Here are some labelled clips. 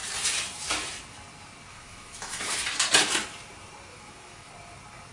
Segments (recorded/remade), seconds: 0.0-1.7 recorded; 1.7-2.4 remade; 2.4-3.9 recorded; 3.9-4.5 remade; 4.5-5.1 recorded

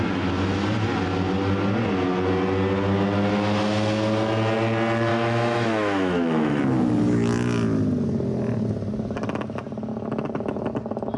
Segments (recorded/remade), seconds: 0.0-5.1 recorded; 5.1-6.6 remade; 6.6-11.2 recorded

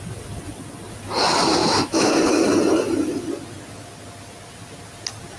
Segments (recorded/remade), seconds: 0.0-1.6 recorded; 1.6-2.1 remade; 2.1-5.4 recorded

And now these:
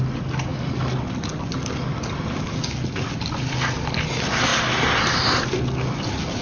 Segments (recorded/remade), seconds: 0.0-6.4 recorded

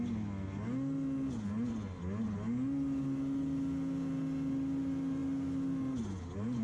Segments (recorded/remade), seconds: 0.0-6.6 recorded